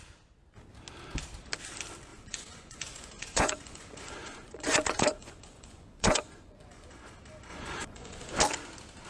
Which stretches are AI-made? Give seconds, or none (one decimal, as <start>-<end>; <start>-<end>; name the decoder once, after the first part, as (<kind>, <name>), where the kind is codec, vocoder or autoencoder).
2.1-7.1 (vocoder, Vocos); 7.5-8.4